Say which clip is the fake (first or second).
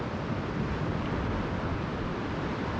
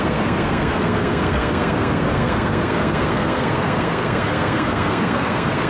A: second